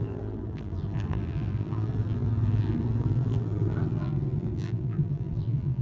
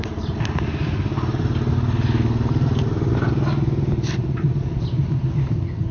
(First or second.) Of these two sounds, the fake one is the first